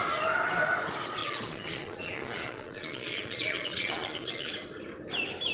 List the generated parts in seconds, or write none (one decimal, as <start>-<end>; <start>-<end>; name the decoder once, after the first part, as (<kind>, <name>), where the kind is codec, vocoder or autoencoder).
1.2-4.5 (vocoder, Vocos)